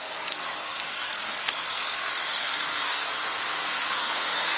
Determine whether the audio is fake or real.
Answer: fake